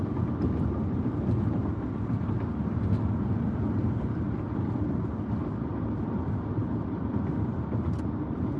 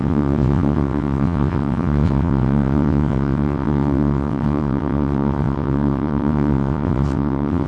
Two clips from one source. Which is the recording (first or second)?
first